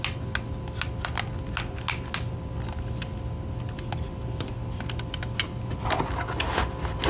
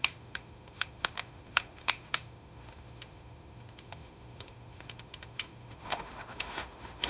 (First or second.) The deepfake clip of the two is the second